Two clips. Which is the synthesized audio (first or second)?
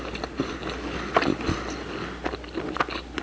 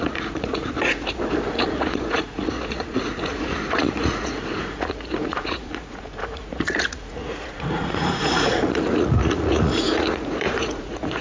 second